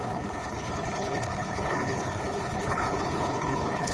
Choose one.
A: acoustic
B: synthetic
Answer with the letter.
B